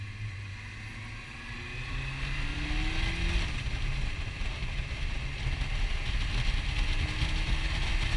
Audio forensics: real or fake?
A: real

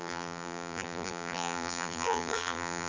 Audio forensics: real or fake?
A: fake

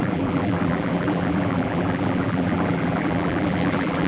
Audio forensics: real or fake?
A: fake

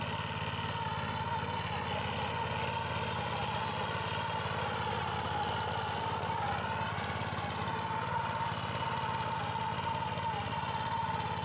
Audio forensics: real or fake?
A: real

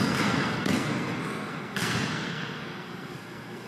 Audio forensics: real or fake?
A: fake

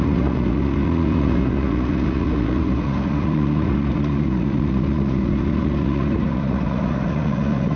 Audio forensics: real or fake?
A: fake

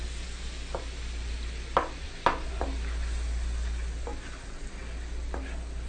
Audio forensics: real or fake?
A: real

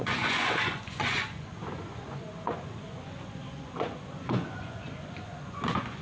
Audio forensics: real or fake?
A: fake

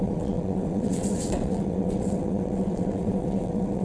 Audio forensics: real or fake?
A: fake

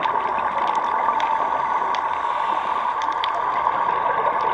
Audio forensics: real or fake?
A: real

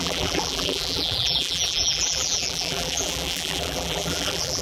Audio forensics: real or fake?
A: fake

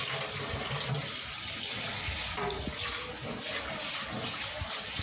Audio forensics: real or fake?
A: real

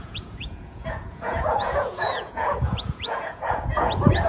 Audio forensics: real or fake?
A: fake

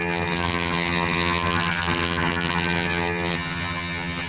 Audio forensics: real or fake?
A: fake